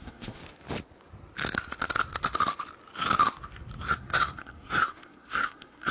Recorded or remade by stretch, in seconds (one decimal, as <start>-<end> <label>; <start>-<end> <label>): 0.0-0.4 remade; 0.4-3.9 recorded; 3.9-5.9 remade